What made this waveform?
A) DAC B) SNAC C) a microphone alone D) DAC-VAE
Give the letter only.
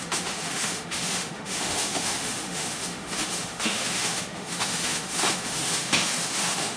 D